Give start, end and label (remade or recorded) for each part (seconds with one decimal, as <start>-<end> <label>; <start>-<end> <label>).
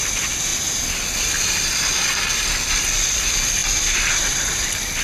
0.0-5.0 recorded